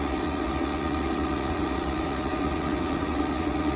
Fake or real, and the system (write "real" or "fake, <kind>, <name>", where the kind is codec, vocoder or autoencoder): fake, vocoder, Vocos